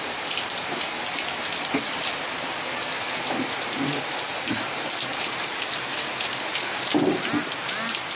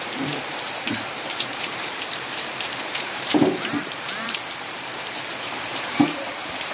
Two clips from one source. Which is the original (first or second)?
first